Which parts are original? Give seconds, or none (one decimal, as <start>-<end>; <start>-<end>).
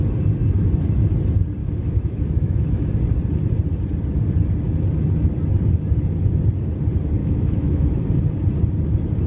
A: 0.0-1.6; 2.9-7.2; 8.0-9.3